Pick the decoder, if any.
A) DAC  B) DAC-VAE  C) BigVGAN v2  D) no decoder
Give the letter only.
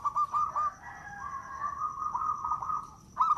D